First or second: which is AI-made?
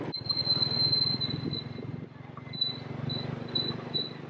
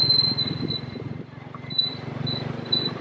second